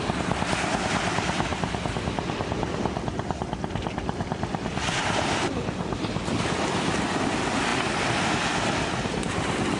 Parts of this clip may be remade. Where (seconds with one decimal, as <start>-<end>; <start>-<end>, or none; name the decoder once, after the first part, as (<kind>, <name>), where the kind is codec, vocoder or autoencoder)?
none